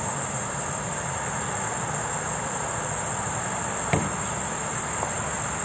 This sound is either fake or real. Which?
real